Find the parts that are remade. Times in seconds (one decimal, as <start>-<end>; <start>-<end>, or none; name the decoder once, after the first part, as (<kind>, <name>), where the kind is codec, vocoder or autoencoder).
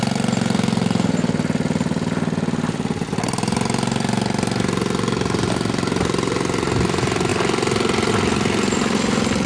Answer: none